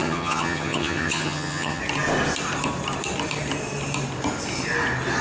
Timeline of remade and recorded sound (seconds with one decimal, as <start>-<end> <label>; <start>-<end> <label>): 0.0-1.8 remade; 1.8-5.2 recorded